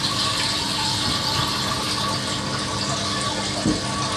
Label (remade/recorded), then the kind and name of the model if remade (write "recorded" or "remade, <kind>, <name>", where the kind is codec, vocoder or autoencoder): recorded